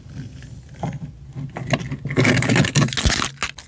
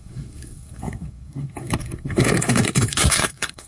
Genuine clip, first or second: first